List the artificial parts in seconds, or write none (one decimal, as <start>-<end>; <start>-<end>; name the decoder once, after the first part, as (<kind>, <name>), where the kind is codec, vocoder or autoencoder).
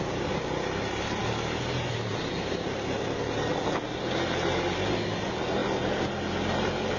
none